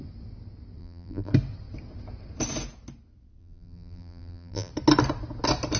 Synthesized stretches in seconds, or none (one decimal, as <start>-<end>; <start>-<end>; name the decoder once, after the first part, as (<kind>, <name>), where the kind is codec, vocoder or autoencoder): 0.8-1.3 (vocoder, BigVGAN v2); 3.4-4.7